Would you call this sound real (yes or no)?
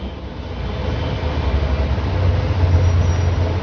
yes